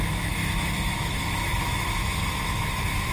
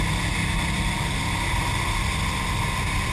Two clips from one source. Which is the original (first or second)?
second